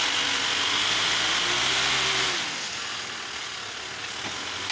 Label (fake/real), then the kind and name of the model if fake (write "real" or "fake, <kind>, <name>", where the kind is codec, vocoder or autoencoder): real